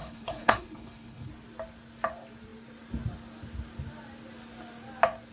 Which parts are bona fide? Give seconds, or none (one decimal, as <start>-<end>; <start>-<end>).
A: 1.3-5.3